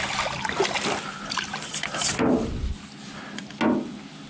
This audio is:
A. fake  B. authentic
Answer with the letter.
B